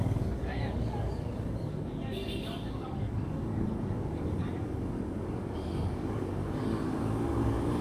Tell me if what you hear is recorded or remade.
remade